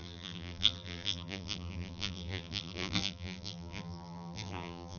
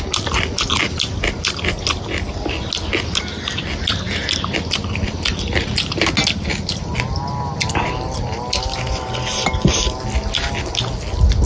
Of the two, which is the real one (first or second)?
second